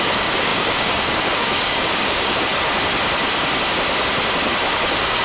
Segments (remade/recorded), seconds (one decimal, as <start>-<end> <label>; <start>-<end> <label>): 0.0-2.5 remade; 2.5-4.3 recorded; 4.3-5.2 remade